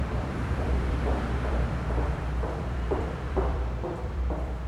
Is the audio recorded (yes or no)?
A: no